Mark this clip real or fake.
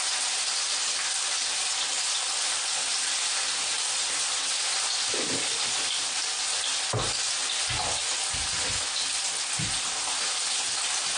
real